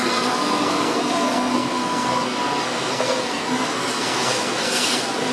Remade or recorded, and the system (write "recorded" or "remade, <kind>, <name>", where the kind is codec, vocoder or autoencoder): remade, codec, SNAC